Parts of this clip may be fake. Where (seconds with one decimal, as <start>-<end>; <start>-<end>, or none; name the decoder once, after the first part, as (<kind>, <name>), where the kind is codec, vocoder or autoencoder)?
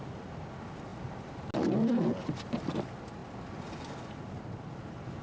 none